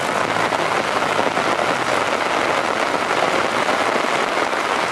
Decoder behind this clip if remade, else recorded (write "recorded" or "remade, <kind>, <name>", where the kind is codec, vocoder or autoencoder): recorded